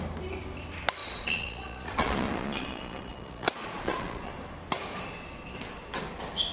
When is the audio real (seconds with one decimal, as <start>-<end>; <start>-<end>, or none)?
0.0-1.0; 4.3-6.5